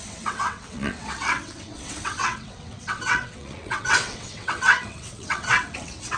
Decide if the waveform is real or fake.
fake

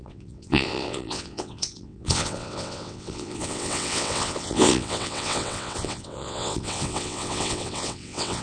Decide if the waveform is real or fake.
fake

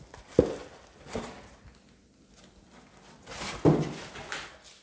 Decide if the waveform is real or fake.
real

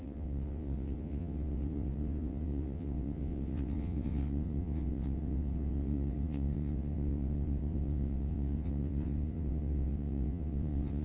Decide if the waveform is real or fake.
fake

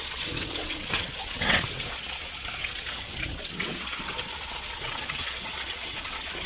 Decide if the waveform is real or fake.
fake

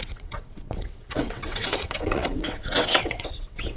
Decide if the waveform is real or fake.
fake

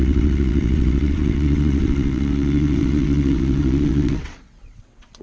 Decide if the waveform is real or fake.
fake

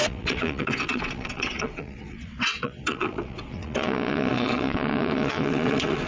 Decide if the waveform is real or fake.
fake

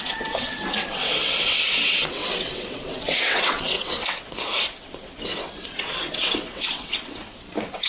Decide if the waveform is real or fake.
fake